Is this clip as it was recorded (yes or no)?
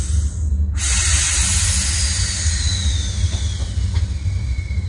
yes